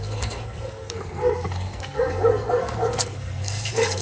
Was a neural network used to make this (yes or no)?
yes